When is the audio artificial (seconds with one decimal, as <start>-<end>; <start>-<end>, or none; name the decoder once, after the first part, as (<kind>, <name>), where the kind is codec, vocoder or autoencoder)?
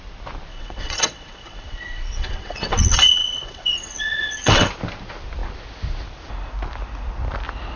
0.5-4.7 (vocoder, WaveNeXt)